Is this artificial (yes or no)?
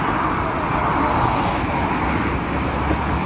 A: no